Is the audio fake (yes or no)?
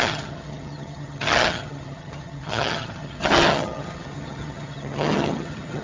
yes